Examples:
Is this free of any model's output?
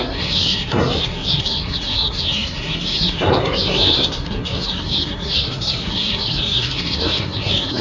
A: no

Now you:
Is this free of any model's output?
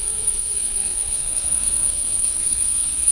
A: no